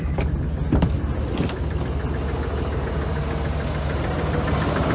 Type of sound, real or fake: real